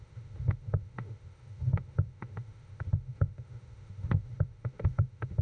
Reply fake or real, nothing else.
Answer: fake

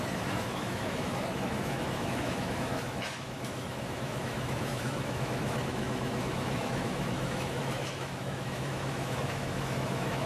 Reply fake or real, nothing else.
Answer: fake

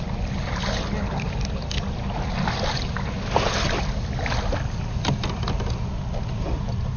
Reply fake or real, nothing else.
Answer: real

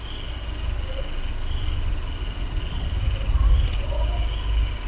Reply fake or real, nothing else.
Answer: real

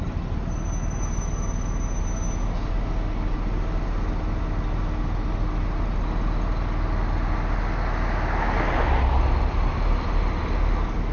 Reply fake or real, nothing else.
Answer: real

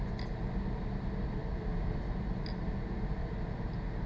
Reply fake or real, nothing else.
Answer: real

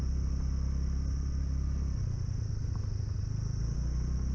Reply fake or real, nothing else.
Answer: real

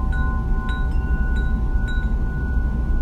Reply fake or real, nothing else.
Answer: real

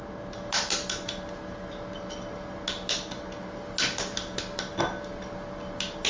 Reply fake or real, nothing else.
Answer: real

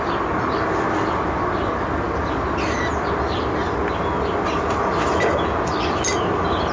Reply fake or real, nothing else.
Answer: real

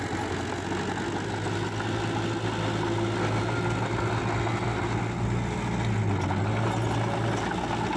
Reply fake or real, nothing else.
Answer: real